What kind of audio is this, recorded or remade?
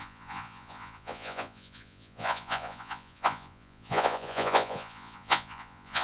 remade